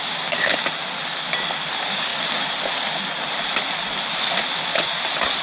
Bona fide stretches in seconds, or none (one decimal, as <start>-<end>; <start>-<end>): 0.5-1.7; 2.1-5.4